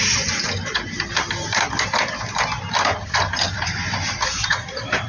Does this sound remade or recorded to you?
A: remade